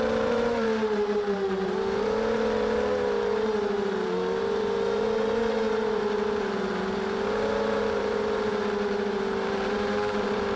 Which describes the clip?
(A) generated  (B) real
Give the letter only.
A